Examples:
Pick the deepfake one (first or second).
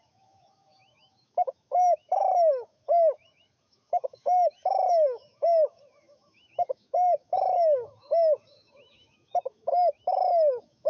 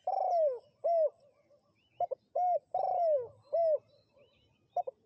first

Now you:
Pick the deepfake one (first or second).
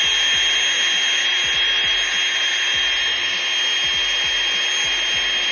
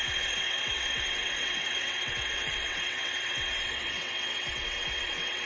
second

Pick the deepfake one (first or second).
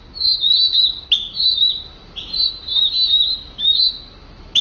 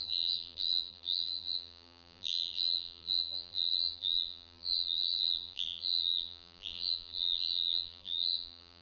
second